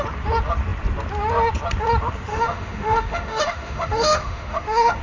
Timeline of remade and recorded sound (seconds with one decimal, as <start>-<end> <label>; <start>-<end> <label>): 0.0-2.3 recorded; 2.3-5.0 remade